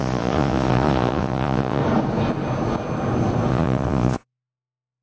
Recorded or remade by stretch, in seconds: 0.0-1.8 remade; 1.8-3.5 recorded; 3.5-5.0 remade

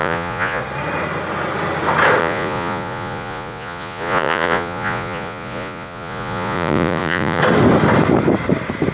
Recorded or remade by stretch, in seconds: 0.0-0.6 remade; 0.6-2.2 recorded; 2.2-7.4 remade; 7.4-8.9 recorded

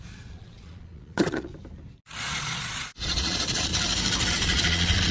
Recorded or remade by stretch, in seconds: 0.0-1.5 remade; 1.5-2.2 recorded; 2.2-3.7 remade; 3.7-4.3 recorded; 4.3-5.1 remade

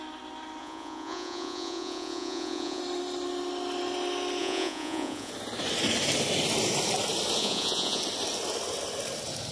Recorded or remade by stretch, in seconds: 0.0-0.6 recorded; 0.6-2.8 remade; 2.8-4.4 recorded; 4.4-5.3 remade; 5.3-7.4 recorded; 7.4-8.0 remade; 8.0-9.5 recorded

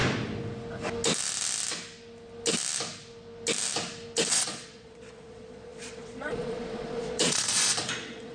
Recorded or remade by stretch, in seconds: 0.0-4.3 recorded; 4.3-8.3 remade